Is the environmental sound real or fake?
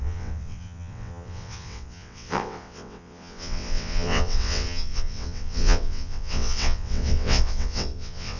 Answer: fake